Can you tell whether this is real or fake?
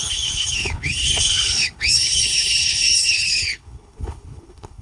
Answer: fake